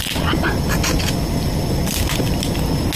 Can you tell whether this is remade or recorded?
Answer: recorded